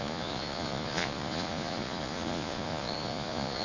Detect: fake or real fake